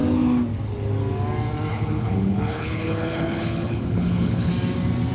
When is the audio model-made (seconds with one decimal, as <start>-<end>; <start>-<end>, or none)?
1.7-4.5